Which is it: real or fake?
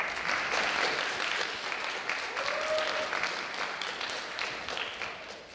real